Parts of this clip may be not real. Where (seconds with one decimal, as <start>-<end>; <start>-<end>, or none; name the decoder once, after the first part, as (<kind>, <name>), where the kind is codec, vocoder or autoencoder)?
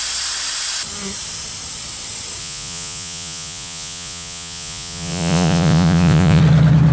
2.4-6.4 (vocoder, Vocos)